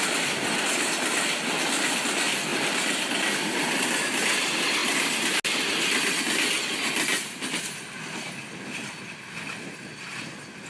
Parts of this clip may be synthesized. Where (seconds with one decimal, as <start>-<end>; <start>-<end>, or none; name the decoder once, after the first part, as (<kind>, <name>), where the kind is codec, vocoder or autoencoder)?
none